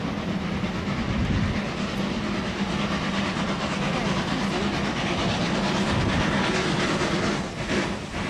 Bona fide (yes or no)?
yes